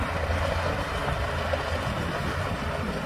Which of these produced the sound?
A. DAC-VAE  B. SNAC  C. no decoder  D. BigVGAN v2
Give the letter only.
C